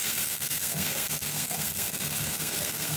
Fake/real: fake